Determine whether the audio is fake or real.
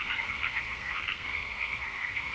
fake